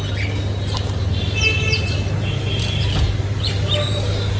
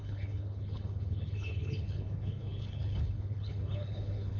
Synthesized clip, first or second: second